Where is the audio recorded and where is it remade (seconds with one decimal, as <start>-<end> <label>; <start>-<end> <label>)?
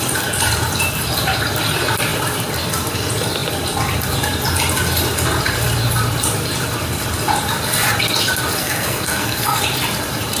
0.0-8.6 recorded; 8.6-9.6 remade; 9.6-10.4 recorded